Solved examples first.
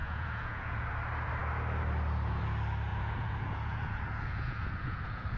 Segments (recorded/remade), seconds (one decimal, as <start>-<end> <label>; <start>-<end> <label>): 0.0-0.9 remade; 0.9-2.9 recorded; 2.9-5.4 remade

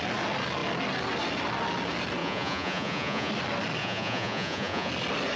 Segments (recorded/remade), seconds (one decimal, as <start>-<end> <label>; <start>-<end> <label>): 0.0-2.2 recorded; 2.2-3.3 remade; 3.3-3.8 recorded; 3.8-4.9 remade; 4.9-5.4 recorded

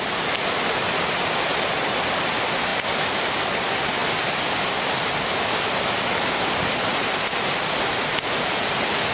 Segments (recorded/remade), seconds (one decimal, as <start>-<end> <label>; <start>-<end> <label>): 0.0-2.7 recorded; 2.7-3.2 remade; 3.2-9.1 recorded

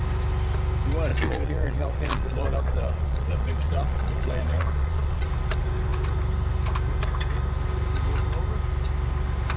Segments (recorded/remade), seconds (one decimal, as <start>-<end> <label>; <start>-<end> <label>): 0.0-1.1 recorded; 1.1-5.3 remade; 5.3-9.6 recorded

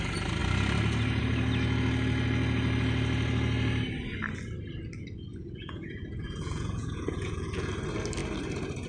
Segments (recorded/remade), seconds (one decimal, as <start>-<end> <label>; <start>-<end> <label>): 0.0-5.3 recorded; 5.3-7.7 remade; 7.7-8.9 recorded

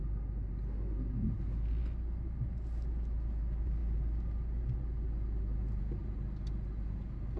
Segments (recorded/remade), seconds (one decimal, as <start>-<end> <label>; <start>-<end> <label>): 0.0-7.4 recorded